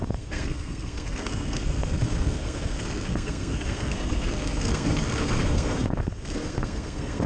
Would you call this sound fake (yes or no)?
yes